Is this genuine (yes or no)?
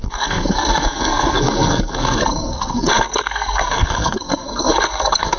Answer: no